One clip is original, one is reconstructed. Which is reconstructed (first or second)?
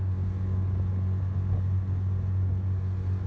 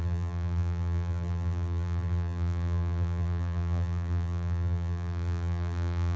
second